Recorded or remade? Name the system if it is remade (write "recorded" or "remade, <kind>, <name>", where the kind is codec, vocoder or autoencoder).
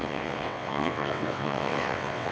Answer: remade, vocoder, WaveNeXt